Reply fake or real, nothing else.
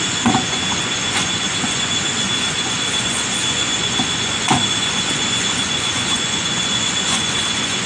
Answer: fake